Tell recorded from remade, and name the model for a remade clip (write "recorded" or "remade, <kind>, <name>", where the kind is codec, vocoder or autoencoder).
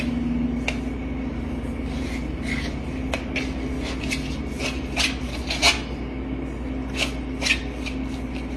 recorded